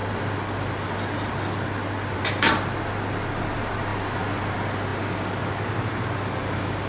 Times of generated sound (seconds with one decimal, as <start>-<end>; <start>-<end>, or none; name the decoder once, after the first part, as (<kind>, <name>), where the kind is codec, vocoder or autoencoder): none